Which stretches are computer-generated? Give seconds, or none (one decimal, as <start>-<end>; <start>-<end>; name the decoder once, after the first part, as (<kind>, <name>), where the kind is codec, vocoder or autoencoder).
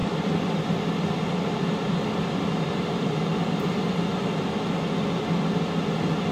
0.0-3.8 (vocoder, BigVGAN v2)